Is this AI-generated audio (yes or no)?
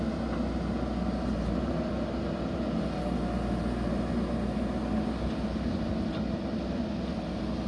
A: no